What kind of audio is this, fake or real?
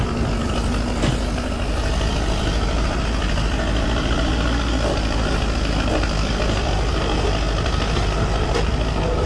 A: real